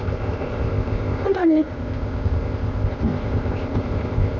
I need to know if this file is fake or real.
fake